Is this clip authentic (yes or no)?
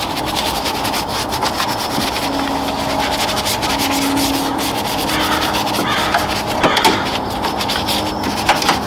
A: yes